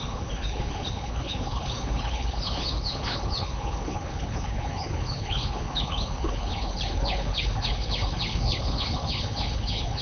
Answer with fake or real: fake